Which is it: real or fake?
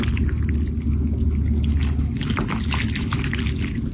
real